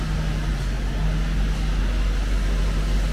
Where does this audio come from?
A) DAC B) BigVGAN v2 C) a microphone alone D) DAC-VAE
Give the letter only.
C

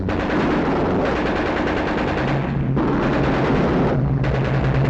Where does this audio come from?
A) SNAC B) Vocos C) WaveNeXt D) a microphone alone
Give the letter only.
D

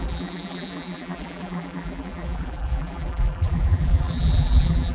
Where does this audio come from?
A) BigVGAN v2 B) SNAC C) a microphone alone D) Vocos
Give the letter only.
A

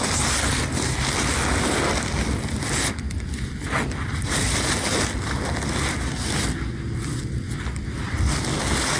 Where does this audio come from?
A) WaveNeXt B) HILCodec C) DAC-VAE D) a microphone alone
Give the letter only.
D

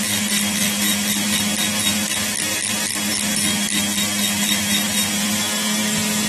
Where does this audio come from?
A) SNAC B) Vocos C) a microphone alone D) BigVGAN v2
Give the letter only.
C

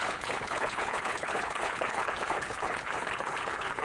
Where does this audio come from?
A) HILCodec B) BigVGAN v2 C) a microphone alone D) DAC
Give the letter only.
A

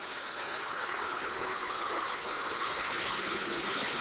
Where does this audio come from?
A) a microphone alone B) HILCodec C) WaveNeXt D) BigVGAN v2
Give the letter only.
B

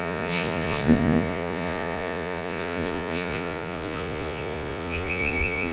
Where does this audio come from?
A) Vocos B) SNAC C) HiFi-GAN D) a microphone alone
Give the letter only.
A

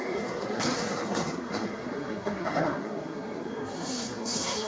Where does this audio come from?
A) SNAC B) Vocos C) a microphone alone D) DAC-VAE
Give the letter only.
A